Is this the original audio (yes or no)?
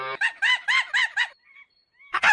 no